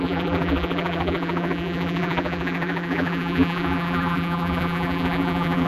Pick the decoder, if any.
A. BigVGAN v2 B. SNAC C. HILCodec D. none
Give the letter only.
A